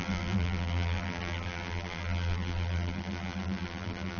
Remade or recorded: remade